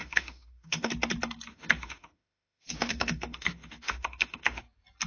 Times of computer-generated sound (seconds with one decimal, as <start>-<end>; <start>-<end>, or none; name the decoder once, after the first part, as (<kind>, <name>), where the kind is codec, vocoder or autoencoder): 0.0-0.9 (autoencoder, DAC-VAE); 1.5-4.6